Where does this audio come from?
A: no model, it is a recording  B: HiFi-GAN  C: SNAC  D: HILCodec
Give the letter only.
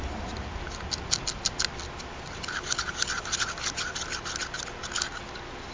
A